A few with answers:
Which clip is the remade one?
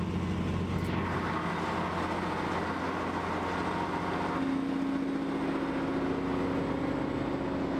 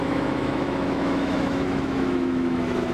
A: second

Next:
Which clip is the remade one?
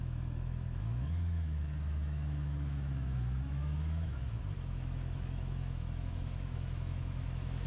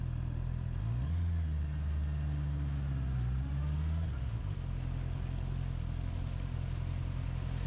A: first